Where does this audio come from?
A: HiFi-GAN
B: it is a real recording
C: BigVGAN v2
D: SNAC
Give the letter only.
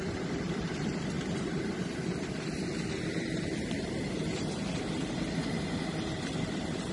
C